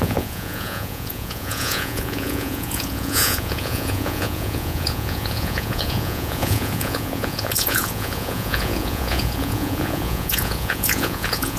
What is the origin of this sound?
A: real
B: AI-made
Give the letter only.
B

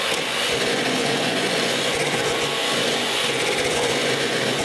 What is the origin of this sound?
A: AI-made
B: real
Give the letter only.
A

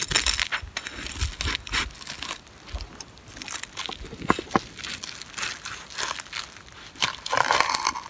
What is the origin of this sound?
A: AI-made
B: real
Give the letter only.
B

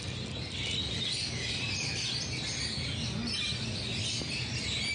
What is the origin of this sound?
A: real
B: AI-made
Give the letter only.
A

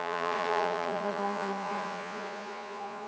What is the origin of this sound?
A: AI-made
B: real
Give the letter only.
A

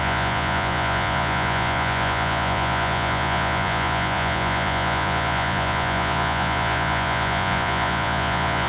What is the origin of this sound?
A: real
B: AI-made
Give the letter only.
B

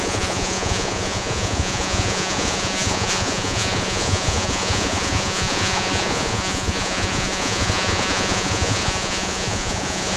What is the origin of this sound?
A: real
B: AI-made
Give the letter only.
B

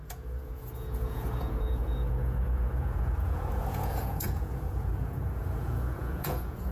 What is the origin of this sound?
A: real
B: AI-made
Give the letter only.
B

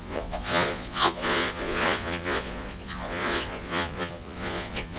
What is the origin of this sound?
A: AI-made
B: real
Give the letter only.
A